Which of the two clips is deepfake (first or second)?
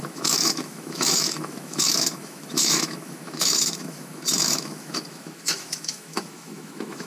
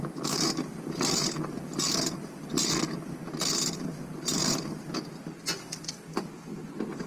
first